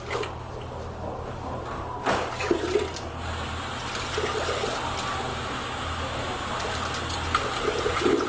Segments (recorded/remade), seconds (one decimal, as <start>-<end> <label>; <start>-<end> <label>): 0.0-5.3 recorded; 5.3-6.3 remade; 6.3-8.3 recorded